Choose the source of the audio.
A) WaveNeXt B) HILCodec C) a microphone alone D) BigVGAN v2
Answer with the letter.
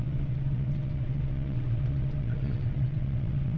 A